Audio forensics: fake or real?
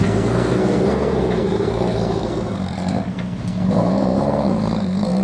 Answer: fake